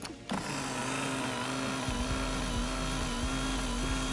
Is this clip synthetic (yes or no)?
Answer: no